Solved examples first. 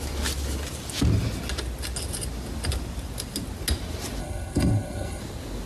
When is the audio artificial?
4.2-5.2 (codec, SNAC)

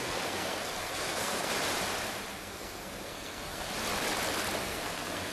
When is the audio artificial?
0.0-1.5 (codec, SNAC); 2.3-3.7; 4.6-5.3

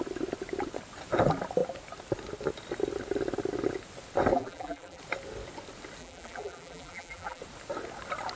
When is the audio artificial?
4.3-5.0 (vocoder, BigVGAN v2); 6.0-7.4

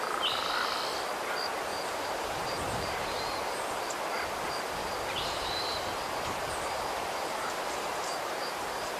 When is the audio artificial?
1.7-3.3 (vocoder, BigVGAN v2); 4.8-8.5

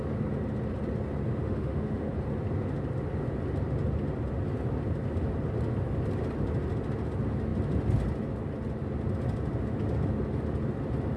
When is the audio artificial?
1.4-2.1 (autoencoder, DAC-VAE)

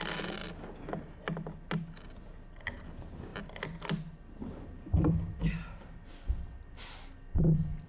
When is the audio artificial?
none

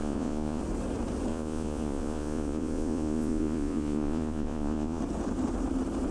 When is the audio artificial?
0.0-0.6 (vocoder, Vocos); 1.3-5.0